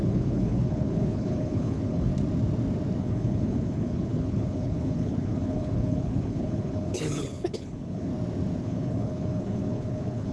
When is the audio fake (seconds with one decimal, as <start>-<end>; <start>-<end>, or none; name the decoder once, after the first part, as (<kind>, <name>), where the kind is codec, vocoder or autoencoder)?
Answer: 0.0-2.1 (codec, HILCodec); 3.0-8.1; 8.6-10.3